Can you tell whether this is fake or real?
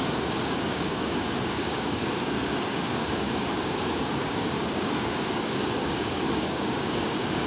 fake